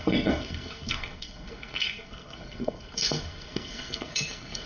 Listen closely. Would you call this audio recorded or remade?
remade